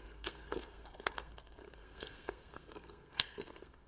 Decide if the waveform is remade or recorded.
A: remade